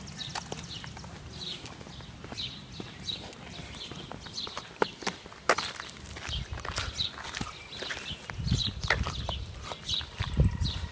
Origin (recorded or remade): recorded